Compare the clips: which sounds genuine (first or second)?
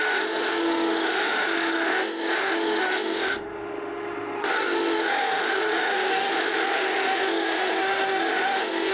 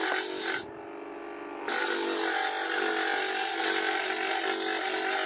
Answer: second